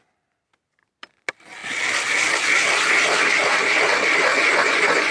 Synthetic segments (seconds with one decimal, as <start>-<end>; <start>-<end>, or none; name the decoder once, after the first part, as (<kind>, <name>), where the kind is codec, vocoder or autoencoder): 4.3-5.1 (vocoder, Vocos)